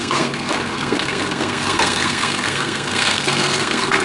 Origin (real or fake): fake